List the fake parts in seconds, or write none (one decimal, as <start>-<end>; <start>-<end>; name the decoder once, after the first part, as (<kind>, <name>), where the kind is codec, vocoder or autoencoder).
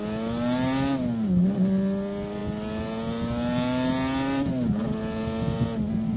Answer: none